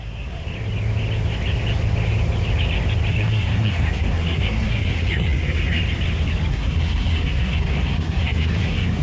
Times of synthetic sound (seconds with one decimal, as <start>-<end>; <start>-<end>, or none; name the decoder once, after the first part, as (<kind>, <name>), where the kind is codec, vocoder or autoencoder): 0.0-0.4 (codec, SNAC); 3.1-5.8; 6.5-9.0